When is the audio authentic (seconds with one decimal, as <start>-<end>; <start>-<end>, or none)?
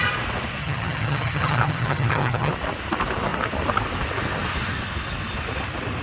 0.0-0.6; 2.5-6.0